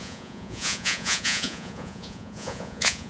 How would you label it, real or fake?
fake